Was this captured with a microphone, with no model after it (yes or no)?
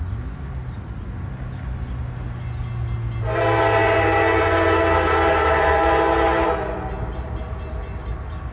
yes